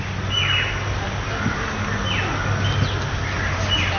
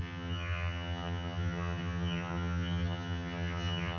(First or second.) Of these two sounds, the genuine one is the first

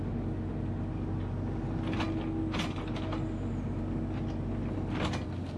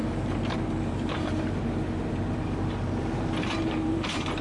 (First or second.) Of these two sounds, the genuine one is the first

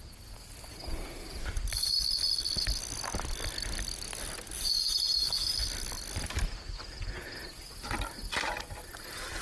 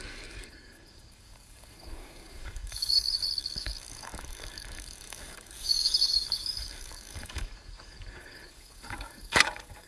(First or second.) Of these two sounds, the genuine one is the first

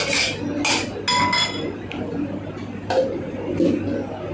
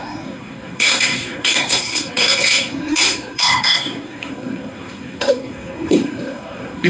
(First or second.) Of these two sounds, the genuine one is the first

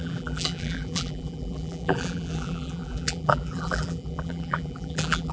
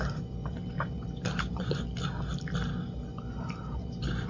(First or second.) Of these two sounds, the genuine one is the second